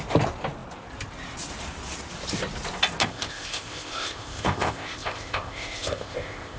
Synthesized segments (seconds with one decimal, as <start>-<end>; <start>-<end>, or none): 3.0-6.6